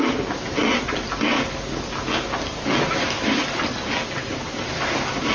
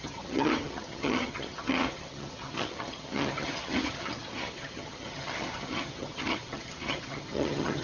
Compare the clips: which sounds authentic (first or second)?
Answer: first